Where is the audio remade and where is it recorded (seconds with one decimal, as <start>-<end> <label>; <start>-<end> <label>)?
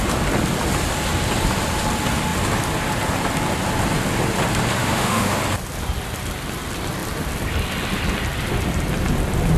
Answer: 0.0-4.8 recorded; 4.8-5.4 remade; 5.4-9.6 recorded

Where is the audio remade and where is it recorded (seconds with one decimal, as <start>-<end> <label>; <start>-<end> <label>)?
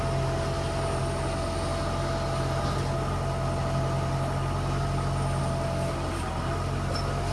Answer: 0.0-7.3 recorded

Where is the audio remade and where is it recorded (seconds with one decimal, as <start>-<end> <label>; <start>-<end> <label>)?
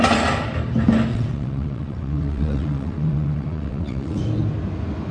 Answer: 0.0-1.1 recorded; 1.1-4.2 remade; 4.2-5.1 recorded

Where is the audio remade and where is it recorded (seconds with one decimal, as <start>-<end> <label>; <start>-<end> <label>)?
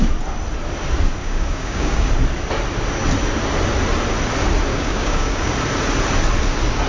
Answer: 0.0-1.2 recorded; 1.2-2.1 remade; 2.1-4.7 recorded; 4.7-5.5 remade; 5.5-6.9 recorded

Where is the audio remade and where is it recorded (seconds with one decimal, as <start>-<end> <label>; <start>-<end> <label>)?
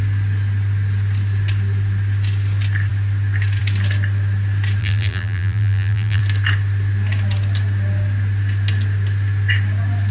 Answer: 0.0-4.8 recorded; 4.8-6.2 remade; 6.2-10.1 recorded